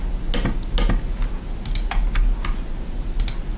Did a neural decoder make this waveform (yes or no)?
no